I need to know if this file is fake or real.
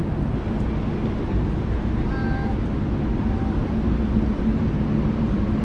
real